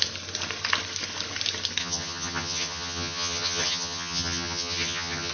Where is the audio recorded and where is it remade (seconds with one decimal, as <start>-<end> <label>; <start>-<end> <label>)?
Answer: 0.0-1.8 recorded; 1.8-5.3 remade